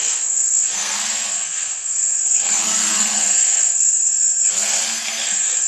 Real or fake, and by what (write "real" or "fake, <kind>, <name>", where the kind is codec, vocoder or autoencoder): fake, codec, SNAC